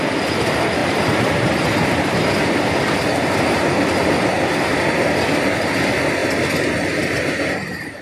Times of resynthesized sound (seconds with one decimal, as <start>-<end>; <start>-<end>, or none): 0.8-2.7